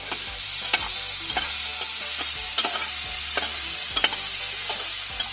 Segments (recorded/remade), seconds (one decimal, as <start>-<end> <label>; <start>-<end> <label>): 0.0-5.3 recorded